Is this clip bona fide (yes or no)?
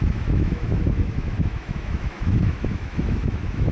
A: no